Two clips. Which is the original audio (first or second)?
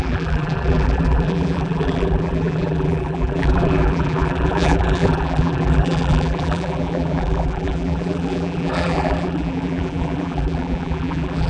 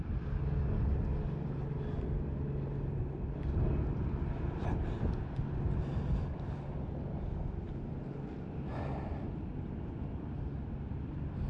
second